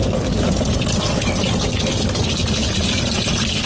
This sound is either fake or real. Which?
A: real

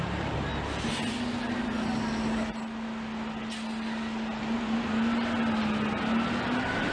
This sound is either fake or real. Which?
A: real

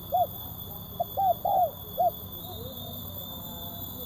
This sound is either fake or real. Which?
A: fake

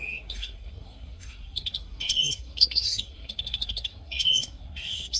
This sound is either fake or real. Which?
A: fake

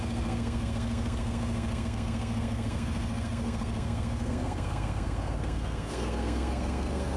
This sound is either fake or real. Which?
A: fake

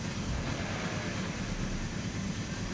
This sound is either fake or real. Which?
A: real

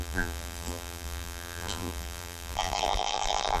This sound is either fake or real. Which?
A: fake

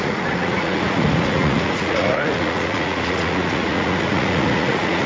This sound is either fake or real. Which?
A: fake